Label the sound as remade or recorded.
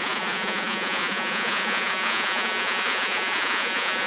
remade